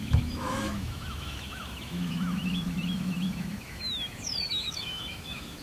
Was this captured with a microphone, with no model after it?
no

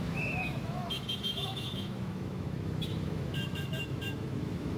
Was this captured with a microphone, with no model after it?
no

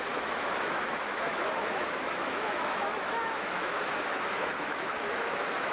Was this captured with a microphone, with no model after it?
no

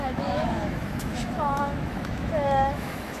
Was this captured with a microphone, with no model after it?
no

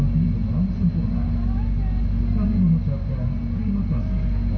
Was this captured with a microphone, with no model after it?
yes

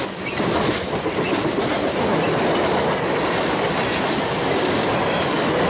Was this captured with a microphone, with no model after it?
yes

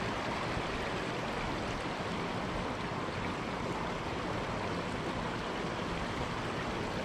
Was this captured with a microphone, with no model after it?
yes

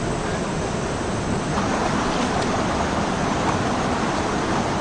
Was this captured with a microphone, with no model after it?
yes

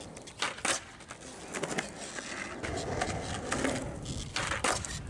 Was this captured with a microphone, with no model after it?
yes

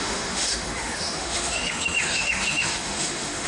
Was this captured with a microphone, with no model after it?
no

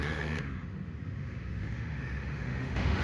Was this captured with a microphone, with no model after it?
no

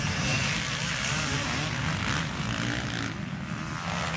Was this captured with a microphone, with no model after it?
yes